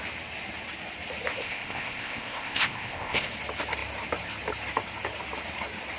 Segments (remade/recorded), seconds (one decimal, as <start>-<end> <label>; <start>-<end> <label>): 0.0-1.3 recorded; 1.3-3.3 remade; 3.3-6.0 recorded

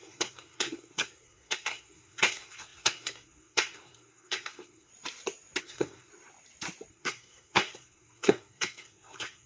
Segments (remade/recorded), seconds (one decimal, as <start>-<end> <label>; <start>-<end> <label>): 0.0-4.9 remade; 4.9-5.6 recorded; 5.6-6.1 remade; 6.1-6.9 recorded; 6.9-9.5 remade

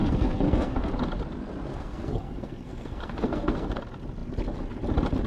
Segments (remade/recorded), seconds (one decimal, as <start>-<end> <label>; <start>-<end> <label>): 0.0-0.9 remade; 0.9-1.7 recorded; 1.7-3.8 remade; 3.8-5.3 recorded

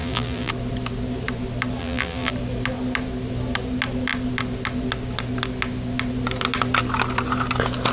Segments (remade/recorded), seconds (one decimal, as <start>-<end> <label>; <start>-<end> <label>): 0.0-0.5 remade; 0.5-1.8 recorded; 1.8-2.3 remade; 2.3-7.9 recorded

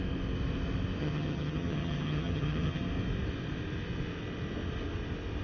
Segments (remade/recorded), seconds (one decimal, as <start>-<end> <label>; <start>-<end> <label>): 0.0-1.0 recorded; 1.0-2.8 remade; 2.8-5.4 recorded